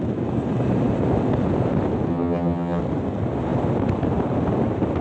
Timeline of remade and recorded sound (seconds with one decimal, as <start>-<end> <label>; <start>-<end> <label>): 0.0-2.1 recorded; 2.1-2.8 remade; 2.8-5.0 recorded